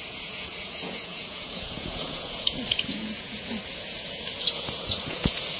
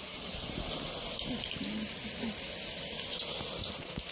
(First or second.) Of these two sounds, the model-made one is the first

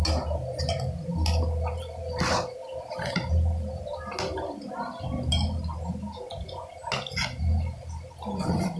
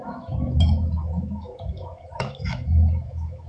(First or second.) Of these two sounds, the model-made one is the second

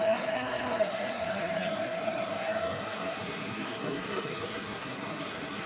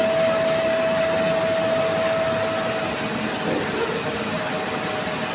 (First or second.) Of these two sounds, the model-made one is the first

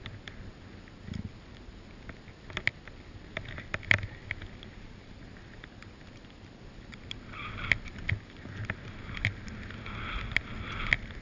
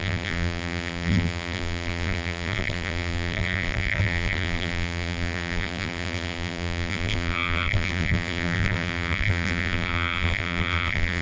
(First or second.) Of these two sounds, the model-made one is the second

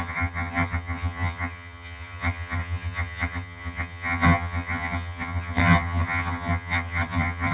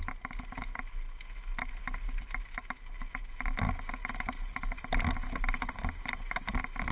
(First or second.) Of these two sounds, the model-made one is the first